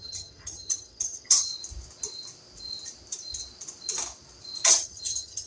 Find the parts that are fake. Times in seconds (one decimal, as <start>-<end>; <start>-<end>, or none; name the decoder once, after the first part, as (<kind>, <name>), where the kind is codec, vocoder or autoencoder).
0.0-1.5 (vocoder, HiFi-GAN); 4.7-5.5